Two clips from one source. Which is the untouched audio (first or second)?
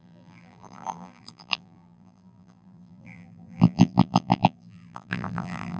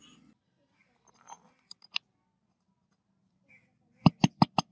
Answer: second